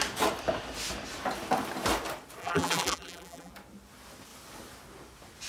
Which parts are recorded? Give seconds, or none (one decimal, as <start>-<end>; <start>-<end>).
0.0-2.4; 3.5-5.5